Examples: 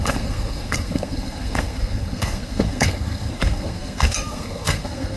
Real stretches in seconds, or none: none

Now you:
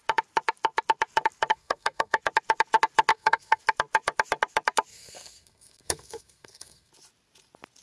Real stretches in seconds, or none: 0.0-1.5; 2.2-3.1; 3.6-4.9; 6.9-7.8

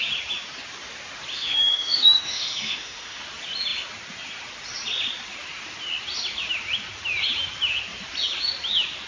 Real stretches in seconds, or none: 0.0-1.3; 3.2-9.1

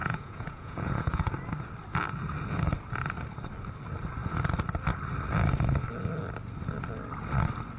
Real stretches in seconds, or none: 1.3-7.8

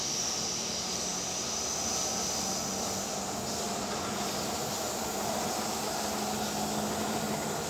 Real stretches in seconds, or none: 0.0-7.7

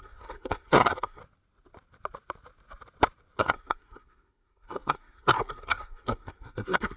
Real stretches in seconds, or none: 1.2-3.4

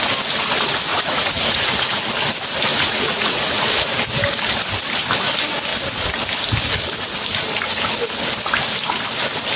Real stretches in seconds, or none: 0.0-0.9; 2.0-2.7; 3.8-9.6